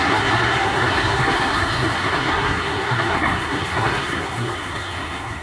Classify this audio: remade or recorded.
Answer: remade